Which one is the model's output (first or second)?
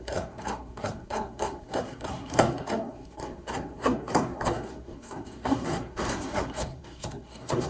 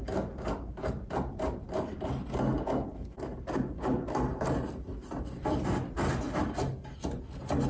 first